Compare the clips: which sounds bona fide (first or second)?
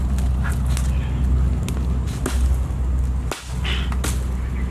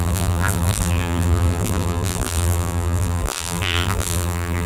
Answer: first